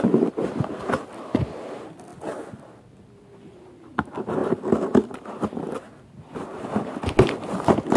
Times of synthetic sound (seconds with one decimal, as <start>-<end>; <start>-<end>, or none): none